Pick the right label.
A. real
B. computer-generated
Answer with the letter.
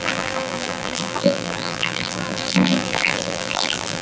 B